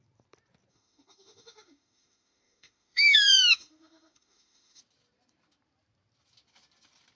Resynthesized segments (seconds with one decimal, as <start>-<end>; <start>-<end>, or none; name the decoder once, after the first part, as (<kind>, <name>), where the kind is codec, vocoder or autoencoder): 0.7-4.8 (autoencoder, DAC-VAE)